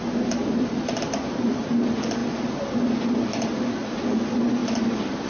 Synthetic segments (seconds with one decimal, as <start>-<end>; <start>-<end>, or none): 0.4-1.6; 2.2-3.2; 4.6-5.3